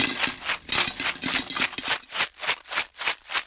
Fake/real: real